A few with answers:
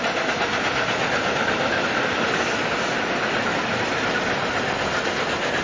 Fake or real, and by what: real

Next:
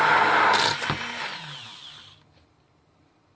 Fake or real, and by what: real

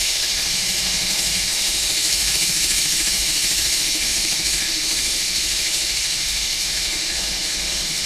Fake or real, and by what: fake, autoencoder, DAC-VAE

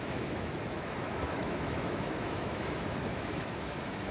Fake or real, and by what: fake, autoencoder, DAC-VAE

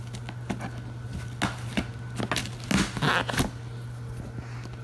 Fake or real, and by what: real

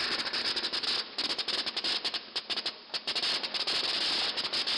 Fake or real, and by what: real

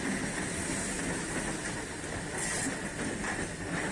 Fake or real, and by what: real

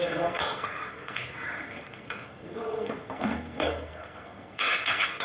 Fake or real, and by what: fake, codec, SNAC